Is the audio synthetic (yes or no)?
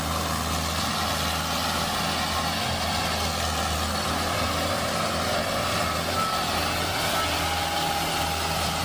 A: no